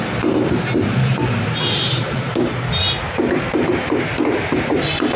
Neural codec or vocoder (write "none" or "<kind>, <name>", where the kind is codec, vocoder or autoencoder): none